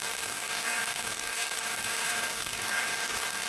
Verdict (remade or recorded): remade